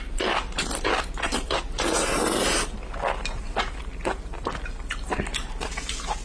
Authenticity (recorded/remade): recorded